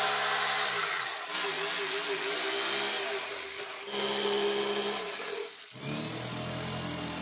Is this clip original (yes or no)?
yes